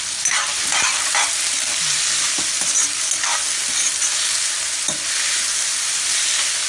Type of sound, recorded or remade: recorded